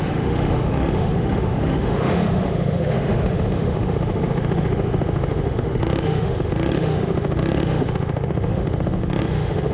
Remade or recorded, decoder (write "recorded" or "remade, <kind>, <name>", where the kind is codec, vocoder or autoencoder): remade, autoencoder, DAC-VAE